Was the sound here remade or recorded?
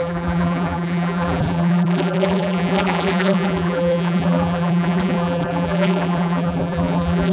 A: remade